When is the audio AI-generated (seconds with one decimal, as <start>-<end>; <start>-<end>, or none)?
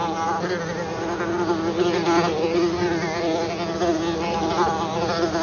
none